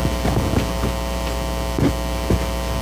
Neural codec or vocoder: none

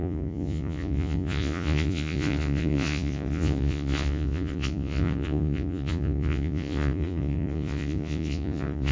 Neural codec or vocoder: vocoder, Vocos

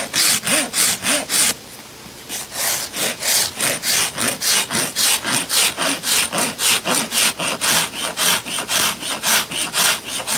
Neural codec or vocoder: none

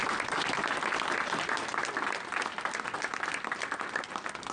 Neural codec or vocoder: none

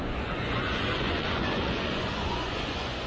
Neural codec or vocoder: vocoder, Vocos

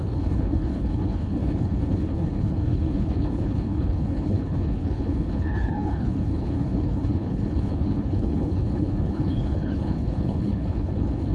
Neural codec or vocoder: codec, HILCodec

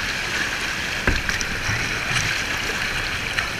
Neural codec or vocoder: none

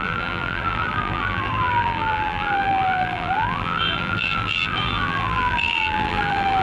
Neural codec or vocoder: vocoder, BigVGAN v2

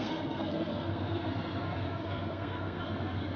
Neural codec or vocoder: codec, SNAC